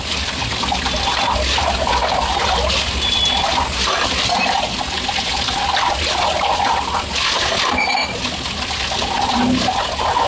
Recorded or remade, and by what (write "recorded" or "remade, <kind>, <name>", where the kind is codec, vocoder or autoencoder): recorded